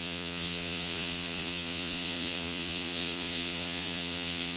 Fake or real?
fake